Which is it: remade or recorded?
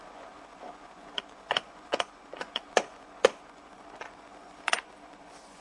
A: remade